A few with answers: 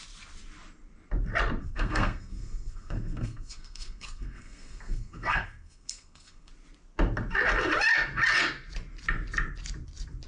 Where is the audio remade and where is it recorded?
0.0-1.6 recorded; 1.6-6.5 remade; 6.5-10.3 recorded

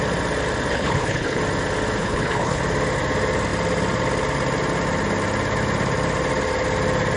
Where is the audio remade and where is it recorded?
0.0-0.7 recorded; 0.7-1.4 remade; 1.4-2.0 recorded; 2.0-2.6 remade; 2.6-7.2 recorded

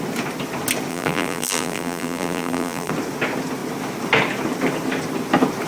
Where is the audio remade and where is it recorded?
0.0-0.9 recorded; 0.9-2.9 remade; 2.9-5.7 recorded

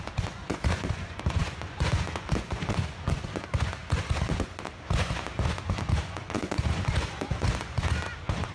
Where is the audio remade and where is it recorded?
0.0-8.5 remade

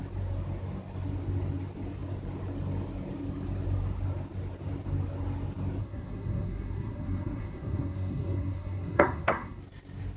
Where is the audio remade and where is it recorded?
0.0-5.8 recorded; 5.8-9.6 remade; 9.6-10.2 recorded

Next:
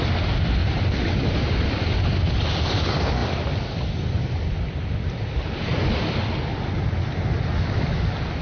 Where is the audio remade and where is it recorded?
0.0-8.4 recorded